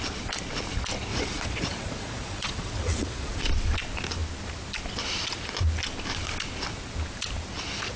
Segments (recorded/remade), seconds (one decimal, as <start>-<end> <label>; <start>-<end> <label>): 0.0-1.1 recorded; 1.1-3.5 remade; 3.5-8.0 recorded